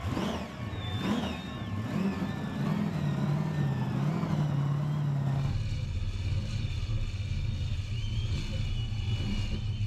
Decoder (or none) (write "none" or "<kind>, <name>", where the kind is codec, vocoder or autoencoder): none